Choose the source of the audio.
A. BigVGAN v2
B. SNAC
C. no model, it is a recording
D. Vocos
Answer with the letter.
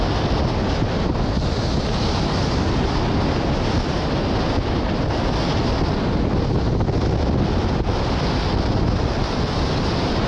C